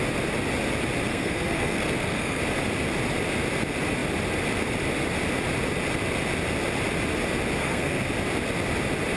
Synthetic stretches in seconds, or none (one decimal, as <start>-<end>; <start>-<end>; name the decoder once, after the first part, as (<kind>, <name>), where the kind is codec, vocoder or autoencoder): 1.1-2.4 (codec, SNAC); 7.6-8.1